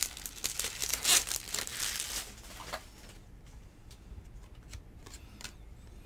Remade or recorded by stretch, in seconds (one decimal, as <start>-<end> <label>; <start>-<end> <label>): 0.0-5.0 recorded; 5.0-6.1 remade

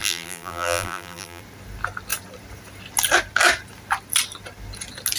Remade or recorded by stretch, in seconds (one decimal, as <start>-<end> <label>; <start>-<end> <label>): 0.0-1.4 remade; 1.4-5.2 recorded

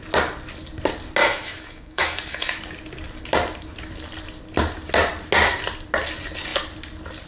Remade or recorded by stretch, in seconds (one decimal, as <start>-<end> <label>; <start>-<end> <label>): 0.0-1.2 recorded; 1.2-2.6 remade; 2.6-7.3 recorded

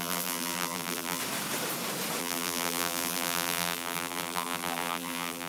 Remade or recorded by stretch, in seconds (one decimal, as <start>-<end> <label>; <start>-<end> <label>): 0.0-1.2 remade; 1.2-2.2 recorded; 2.2-5.5 remade